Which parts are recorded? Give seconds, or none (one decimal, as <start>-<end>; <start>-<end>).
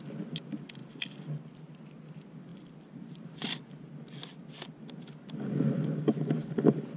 0.0-7.0